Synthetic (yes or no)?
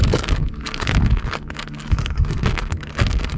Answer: yes